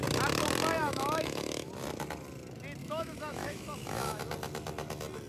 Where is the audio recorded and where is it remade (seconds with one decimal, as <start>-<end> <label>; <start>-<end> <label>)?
0.0-0.8 recorded; 0.8-1.7 remade; 1.7-2.8 recorded; 2.8-4.2 remade; 4.2-5.3 recorded